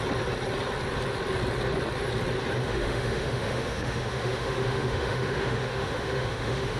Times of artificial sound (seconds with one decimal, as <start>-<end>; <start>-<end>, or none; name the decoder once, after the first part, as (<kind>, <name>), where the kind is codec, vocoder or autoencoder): 2.6-6.8 (autoencoder, DAC-VAE)